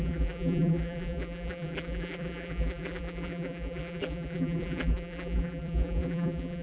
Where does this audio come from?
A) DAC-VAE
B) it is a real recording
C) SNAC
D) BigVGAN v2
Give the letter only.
D